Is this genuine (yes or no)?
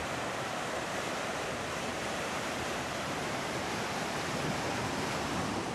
no